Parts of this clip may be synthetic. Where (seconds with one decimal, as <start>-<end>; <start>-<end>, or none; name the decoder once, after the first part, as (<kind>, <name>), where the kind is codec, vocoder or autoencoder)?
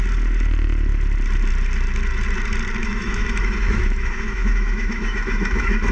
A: 2.8-5.9 (autoencoder, DAC-VAE)